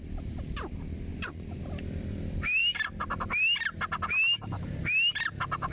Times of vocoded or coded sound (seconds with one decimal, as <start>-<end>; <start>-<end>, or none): 1.1-1.6